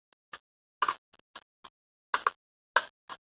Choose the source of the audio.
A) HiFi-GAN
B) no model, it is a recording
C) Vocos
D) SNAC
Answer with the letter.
B